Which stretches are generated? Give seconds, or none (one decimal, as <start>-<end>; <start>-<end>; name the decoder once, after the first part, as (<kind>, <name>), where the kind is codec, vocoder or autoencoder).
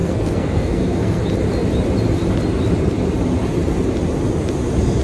0.0-1.2 (codec, SNAC)